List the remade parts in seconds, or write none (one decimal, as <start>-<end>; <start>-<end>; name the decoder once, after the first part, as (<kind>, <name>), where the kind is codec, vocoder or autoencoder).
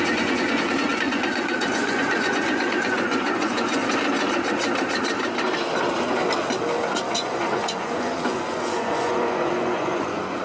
0.0-3.8 (vocoder, Vocos); 7.1-10.4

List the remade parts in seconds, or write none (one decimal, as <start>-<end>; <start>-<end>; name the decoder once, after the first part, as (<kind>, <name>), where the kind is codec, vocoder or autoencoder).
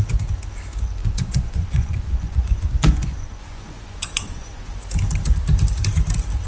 1.0-4.7 (vocoder, Vocos)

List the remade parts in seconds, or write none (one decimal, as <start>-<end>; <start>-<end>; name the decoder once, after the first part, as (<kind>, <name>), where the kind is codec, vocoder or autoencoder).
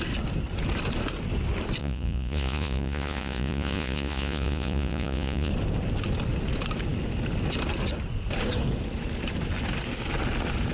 1.8-5.5 (vocoder, Vocos)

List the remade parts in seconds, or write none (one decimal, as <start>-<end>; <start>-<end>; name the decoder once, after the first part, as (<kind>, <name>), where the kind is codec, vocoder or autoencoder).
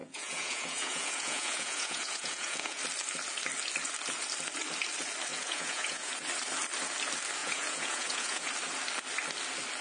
0.0-2.8 (vocoder, Vocos); 5.3-6.1; 7.4-8.5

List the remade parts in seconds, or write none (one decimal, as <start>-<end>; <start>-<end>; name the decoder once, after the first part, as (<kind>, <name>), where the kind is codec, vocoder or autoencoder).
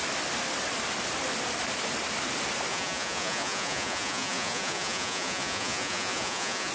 2.7-6.7 (vocoder, Vocos)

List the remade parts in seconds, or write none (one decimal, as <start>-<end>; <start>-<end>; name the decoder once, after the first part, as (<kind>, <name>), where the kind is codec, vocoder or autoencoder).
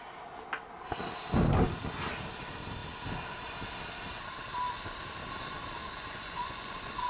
5.8-7.1 (vocoder, Vocos)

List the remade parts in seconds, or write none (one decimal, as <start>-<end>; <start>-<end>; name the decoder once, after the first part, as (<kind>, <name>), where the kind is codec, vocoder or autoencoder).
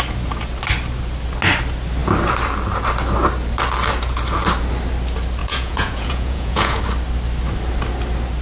5.4-6.8 (vocoder, Vocos)